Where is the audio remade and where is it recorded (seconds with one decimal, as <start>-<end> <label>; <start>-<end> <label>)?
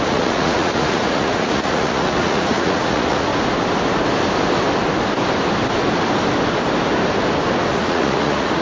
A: 0.0-3.3 remade; 3.3-7.7 recorded; 7.7-8.6 remade